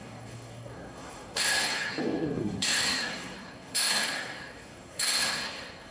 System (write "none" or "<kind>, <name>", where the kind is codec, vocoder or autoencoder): codec, SNAC